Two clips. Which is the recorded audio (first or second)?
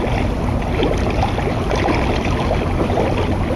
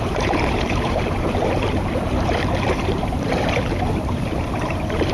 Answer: first